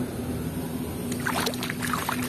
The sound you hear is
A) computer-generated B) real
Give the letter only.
B